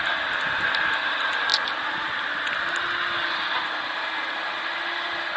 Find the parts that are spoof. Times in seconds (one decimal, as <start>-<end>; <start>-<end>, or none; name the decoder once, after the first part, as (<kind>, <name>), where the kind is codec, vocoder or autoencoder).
none